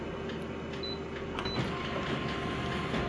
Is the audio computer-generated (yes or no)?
no